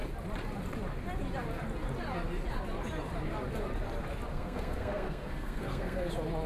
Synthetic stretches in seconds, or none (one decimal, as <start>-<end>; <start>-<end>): 4.3-6.1